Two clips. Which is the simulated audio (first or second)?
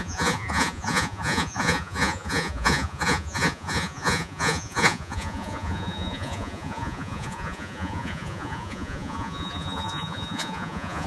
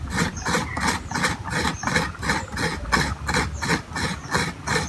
first